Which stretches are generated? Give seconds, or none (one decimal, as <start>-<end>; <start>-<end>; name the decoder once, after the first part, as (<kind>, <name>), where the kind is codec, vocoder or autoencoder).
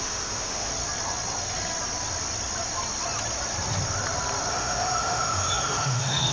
0.0-0.7 (autoencoder, DAC-VAE); 4.5-6.3